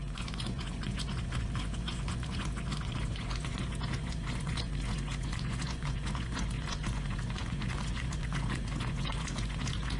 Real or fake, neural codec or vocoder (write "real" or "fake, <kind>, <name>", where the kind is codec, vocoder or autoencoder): fake, vocoder, Vocos